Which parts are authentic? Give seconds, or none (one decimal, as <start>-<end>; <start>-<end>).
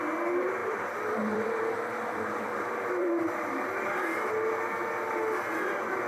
0.0-0.6; 4.3-6.1